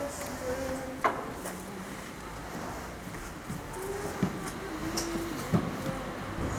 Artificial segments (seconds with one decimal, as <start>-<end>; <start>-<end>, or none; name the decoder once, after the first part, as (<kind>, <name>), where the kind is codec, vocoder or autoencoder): none